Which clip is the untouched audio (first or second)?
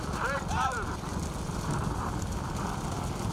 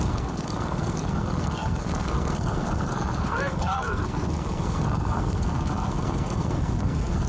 first